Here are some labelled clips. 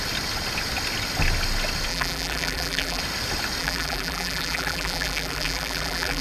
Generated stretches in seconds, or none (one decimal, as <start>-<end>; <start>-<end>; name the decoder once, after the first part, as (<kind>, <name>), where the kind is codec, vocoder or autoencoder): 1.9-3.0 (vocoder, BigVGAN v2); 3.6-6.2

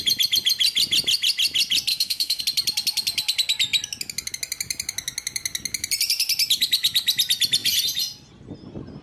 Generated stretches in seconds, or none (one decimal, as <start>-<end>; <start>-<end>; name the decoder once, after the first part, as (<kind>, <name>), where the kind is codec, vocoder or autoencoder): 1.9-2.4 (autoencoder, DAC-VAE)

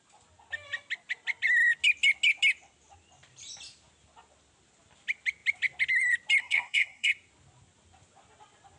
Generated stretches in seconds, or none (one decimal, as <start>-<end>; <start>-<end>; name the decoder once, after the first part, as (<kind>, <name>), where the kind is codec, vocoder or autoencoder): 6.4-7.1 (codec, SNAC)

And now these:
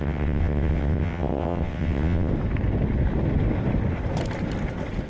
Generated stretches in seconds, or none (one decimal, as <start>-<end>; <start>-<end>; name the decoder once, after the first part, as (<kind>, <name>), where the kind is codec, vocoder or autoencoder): 0.0-2.3 (vocoder, WaveNeXt)

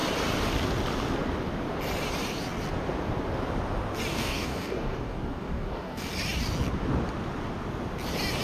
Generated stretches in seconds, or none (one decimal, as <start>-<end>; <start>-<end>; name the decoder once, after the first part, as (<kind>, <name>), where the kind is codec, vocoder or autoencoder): 4.1-6.1 (codec, DAC)

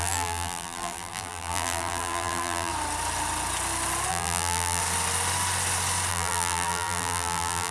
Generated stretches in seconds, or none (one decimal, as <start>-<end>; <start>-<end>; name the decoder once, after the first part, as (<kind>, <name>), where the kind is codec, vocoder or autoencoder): 0.0-2.7 (vocoder, BigVGAN v2); 4.1-4.8; 6.1-7.7